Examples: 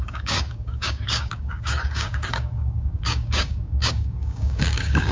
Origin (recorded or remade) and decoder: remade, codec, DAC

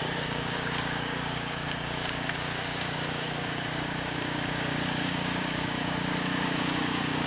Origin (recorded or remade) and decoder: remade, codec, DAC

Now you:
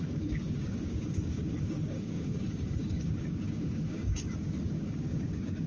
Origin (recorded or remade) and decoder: remade, codec, DAC